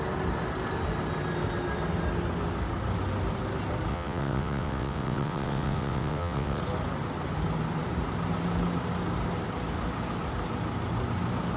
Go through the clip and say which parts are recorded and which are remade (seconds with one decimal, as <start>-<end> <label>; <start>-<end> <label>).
0.0-3.9 recorded; 3.9-6.6 remade; 6.6-11.6 recorded